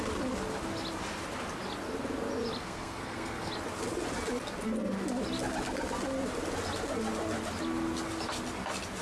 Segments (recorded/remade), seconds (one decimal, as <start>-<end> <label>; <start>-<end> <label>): 0.0-2.6 recorded; 2.6-3.5 remade; 3.5-9.0 recorded